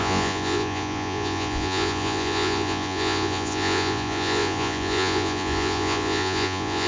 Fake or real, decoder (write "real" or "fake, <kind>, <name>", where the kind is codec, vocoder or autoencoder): fake, vocoder, Vocos